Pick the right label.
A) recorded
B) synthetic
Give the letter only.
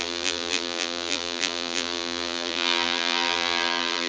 B